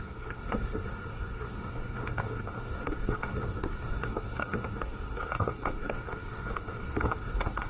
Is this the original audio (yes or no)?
no